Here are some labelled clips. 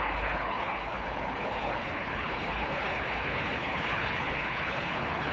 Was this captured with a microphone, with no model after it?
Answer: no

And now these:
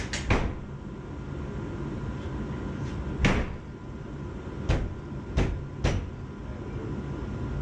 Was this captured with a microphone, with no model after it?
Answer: yes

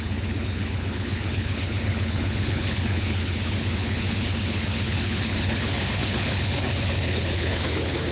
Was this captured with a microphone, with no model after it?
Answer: no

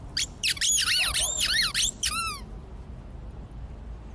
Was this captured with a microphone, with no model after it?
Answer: yes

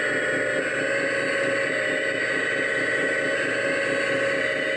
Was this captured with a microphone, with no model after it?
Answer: yes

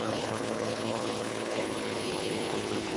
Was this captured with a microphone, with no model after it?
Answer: no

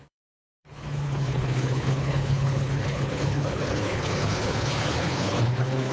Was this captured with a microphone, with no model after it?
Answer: no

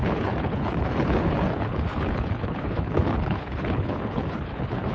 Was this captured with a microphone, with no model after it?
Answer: no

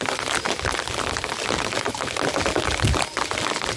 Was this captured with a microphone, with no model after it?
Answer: yes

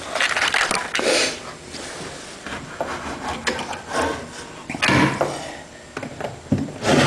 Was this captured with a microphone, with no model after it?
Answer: yes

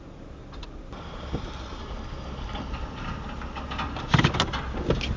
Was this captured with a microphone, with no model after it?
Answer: yes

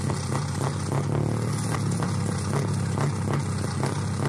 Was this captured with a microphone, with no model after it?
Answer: yes